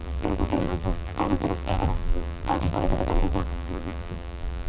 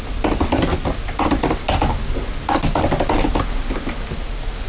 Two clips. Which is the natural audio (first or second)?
second